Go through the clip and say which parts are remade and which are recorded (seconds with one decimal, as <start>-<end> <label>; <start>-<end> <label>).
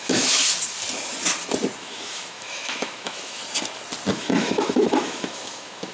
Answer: 0.0-0.4 remade; 0.4-1.8 recorded; 1.8-3.4 remade; 3.4-4.1 recorded; 4.1-5.9 remade